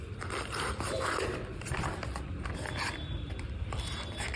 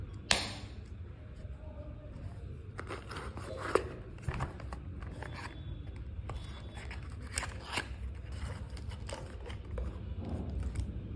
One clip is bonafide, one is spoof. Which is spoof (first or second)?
first